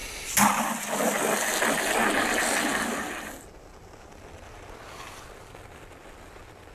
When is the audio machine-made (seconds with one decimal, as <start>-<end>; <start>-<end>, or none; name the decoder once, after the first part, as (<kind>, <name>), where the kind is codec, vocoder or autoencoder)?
none